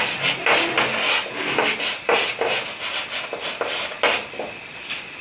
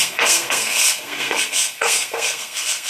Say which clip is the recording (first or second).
first